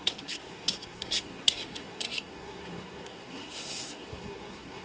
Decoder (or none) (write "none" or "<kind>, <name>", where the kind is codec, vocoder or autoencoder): codec, SNAC